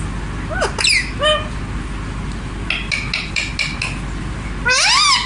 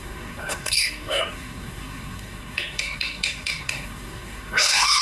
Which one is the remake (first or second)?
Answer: second